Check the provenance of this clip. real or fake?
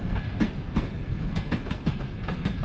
fake